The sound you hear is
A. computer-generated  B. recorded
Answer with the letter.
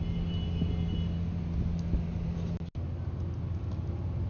B